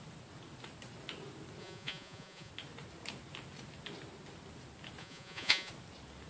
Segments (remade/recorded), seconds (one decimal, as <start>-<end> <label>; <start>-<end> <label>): 0.0-1.6 recorded; 1.6-2.5 remade; 2.5-5.0 recorded; 5.0-5.7 remade; 5.7-6.3 recorded